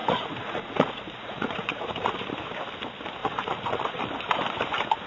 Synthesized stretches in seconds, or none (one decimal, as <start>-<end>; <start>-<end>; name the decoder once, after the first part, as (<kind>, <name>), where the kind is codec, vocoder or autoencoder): 0.0-2.3 (vocoder, Vocos); 3.2-4.0